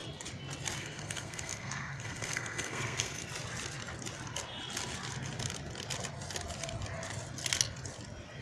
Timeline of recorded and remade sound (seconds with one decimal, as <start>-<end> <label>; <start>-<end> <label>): 0.0-0.8 recorded; 0.8-3.2 remade; 3.2-8.4 recorded